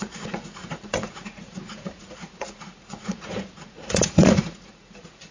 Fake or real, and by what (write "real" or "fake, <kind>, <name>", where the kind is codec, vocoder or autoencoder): fake, vocoder, Vocos